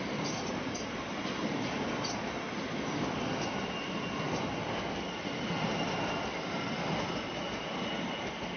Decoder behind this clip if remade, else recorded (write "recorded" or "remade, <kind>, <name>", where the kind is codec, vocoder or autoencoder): recorded